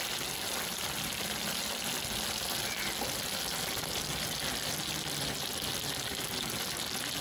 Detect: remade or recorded recorded